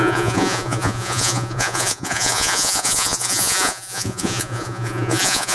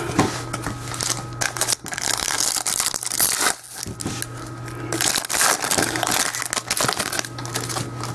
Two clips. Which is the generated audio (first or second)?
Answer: first